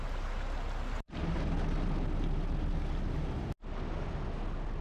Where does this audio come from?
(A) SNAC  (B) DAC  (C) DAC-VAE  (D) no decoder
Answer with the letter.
D